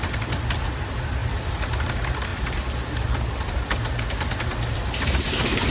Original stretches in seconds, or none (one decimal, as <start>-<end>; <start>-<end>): 1.2-1.8; 2.3-4.7